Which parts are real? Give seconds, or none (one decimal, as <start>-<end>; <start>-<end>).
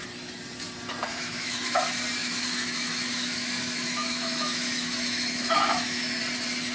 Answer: 0.0-1.1; 1.8-2.2; 6.2-6.7